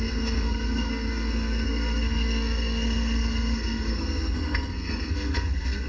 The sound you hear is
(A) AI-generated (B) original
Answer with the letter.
A